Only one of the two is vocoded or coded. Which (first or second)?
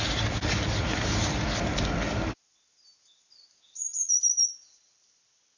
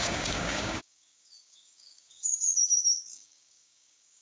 second